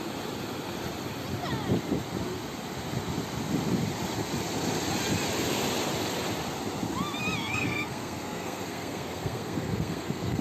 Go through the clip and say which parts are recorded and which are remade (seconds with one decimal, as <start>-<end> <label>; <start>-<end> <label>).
0.0-7.4 recorded; 7.4-10.4 remade